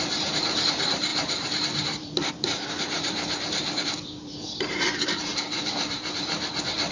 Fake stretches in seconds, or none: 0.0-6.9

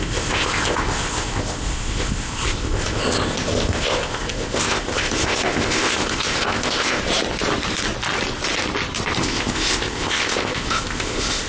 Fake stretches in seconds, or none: 0.0-7.0; 9.2-11.5

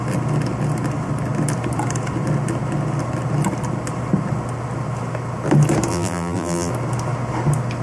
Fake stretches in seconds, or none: 5.9-6.7

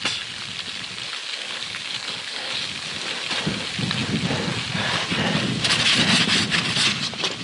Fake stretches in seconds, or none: 1.2-2.5

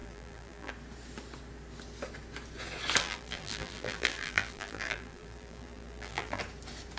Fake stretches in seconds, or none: 0.0-0.7; 3.0-6.4

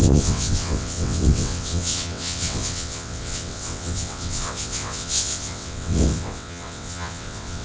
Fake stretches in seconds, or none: 0.0-7.6

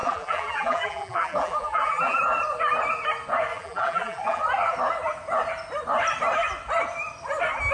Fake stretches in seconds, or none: 0.0-2.2; 3.5-4.4

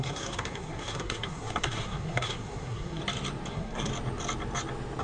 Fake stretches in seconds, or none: 0.0-3.0; 3.5-3.9